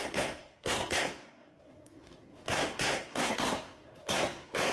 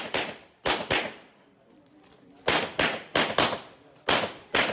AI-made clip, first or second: first